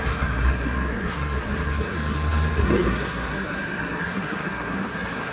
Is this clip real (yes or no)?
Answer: no